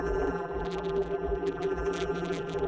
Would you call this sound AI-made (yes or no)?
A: yes